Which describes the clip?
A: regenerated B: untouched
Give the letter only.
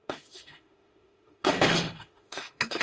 A